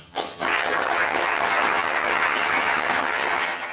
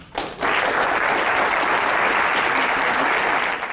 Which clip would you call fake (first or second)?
first